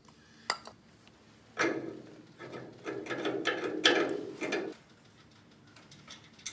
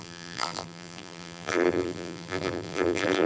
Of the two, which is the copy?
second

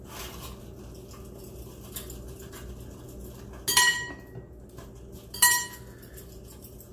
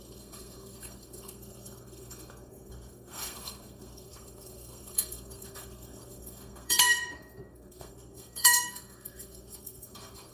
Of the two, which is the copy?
second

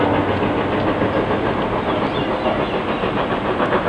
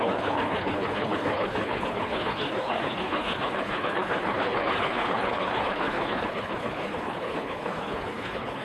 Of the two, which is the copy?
second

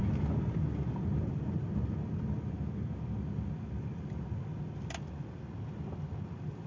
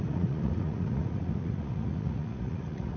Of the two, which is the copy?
second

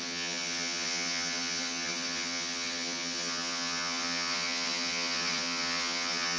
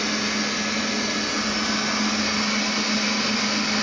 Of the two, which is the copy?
first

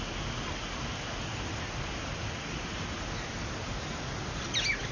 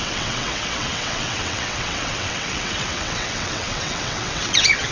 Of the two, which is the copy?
second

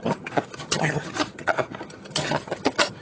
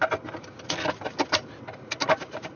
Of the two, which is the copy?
first